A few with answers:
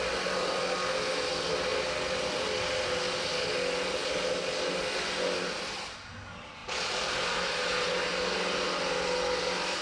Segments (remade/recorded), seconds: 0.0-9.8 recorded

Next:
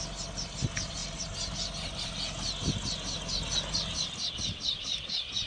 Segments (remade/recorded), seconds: 0.0-5.5 recorded

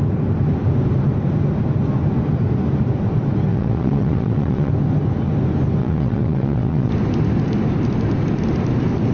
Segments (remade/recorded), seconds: 0.0-3.5 recorded; 3.5-4.7 remade; 4.7-5.8 recorded; 5.8-6.9 remade; 6.9-9.1 recorded

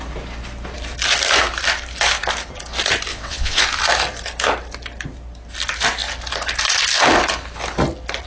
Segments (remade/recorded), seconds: 0.0-3.1 recorded; 3.1-3.6 remade; 3.6-8.3 recorded

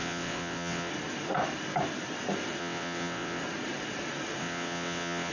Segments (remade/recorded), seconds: 0.0-0.9 remade; 0.9-2.6 recorded; 2.6-3.4 remade; 3.4-4.4 recorded; 4.4-5.3 remade